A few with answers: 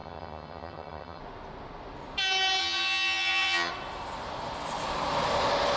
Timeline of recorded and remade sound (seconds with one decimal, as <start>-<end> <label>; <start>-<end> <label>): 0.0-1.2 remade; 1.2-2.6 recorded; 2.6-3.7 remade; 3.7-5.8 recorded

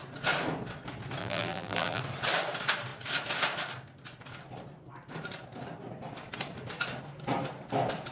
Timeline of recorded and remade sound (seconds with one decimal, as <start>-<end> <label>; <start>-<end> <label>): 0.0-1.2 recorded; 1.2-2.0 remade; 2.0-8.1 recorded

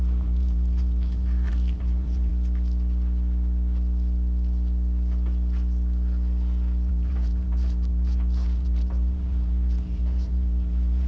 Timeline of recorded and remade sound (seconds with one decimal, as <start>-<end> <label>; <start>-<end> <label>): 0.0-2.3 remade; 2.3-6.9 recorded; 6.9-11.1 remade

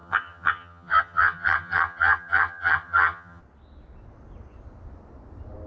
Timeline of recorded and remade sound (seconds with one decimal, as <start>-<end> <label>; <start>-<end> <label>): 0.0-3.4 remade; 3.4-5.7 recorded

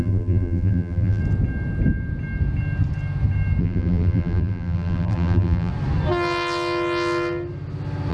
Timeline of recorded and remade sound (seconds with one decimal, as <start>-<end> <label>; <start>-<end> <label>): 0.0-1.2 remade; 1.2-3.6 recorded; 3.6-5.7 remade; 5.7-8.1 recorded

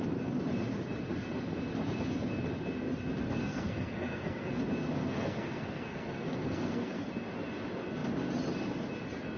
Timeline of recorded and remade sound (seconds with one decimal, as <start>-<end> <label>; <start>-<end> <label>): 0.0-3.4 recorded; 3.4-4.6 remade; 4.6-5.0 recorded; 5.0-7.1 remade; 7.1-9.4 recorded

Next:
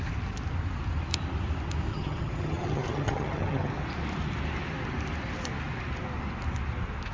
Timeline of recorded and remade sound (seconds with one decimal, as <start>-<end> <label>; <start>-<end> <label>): 0.0-1.9 recorded; 1.9-3.7 remade; 3.7-7.1 recorded